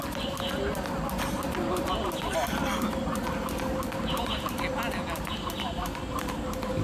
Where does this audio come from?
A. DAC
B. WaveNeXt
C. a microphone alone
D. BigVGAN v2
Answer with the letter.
C